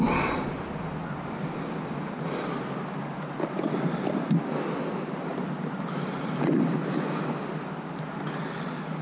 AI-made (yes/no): no